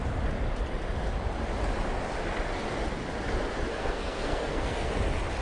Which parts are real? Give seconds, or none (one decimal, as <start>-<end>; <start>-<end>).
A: 0.0-3.7; 4.9-5.4